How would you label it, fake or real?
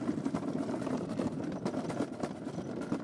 fake